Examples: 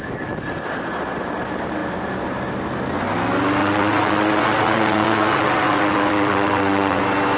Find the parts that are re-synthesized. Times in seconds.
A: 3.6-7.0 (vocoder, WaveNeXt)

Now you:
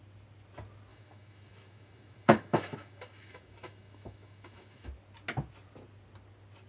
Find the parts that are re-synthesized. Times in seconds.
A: 0.9-4.9 (autoencoder, DAC-VAE)

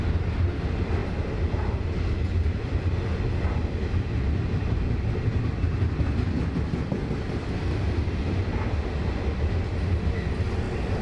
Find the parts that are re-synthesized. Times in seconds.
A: none

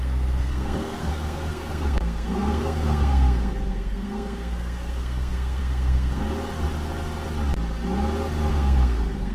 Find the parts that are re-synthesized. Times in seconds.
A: 0.0-6.2 (codec, SNAC); 8.5-9.3

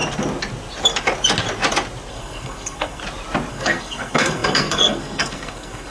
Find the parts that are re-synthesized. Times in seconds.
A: 2.1-3.0 (codec, SNAC); 3.5-5.9

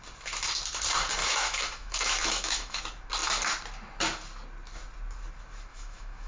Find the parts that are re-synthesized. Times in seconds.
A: 1.2-2.8 (autoencoder, DAC-VAE); 5.7-6.3

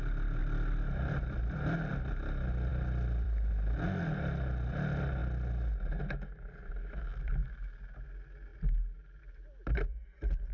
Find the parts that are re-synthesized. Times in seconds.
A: 0.4-1.9 (vocoder, BigVGAN v2); 2.7-3.5; 8.5-9.2

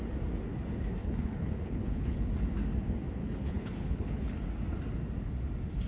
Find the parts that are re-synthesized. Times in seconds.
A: 1.0-2.3 (codec, HILCodec); 3.2-4.4